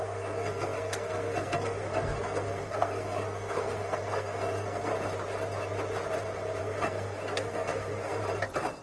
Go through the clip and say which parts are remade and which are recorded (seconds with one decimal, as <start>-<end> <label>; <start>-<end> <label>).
0.0-4.9 remade; 4.9-6.6 recorded; 6.6-8.2 remade; 8.2-8.8 recorded